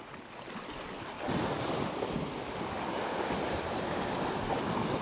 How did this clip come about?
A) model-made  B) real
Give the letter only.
B